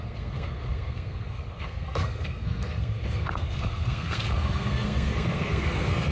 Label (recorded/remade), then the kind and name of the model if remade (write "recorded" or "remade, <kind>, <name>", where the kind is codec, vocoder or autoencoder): remade, codec, SNAC